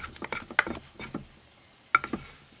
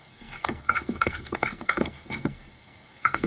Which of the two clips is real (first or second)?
first